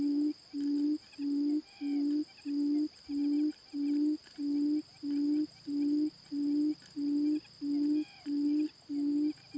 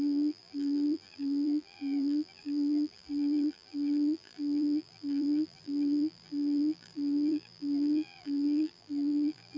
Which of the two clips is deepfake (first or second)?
second